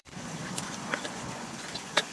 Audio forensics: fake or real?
fake